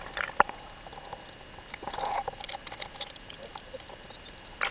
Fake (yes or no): no